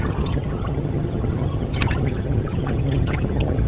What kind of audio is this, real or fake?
fake